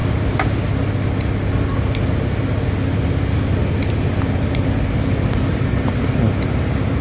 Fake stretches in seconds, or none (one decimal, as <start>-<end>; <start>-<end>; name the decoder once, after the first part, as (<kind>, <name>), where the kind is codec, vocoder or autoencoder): none